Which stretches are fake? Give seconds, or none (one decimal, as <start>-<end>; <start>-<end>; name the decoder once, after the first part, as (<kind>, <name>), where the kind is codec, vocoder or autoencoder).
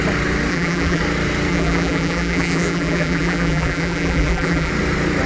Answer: 0.5-1.0 (vocoder, BigVGAN v2); 1.5-4.7